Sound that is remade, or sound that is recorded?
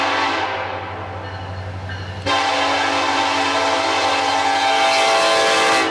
recorded